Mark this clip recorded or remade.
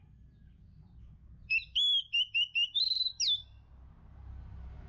recorded